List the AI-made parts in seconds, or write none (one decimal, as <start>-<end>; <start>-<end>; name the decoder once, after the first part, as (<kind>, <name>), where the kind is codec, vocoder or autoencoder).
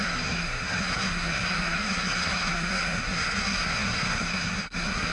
0.0-5.1 (codec, SNAC)